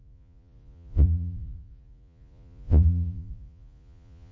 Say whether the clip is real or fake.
fake